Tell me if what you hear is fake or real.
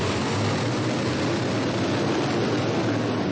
fake